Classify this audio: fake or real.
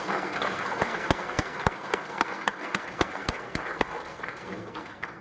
fake